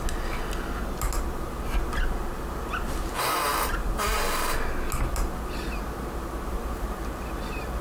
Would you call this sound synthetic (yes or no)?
no